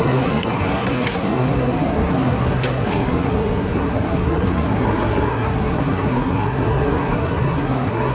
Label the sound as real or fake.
fake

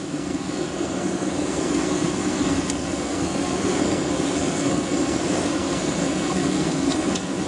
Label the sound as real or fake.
fake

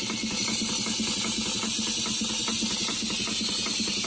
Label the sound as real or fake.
real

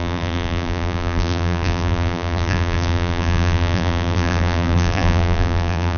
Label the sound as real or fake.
fake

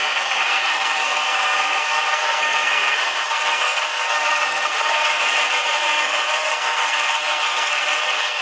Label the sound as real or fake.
fake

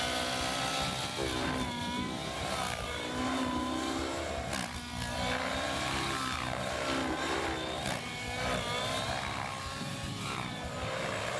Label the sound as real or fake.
real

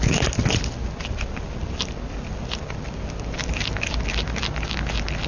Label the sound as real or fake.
real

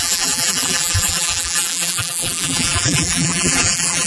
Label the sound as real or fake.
fake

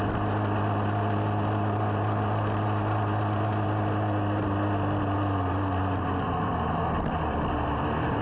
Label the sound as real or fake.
real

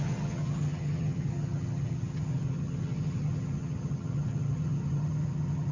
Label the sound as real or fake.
fake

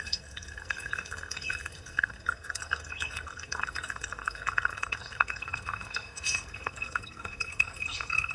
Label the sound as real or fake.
fake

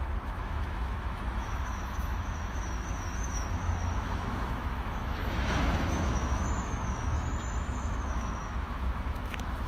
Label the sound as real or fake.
fake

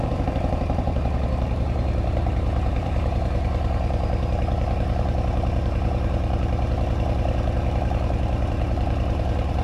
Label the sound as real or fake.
fake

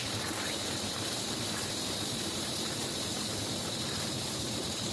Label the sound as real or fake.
fake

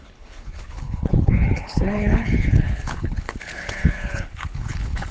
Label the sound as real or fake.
fake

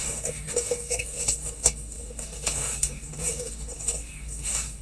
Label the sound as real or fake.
fake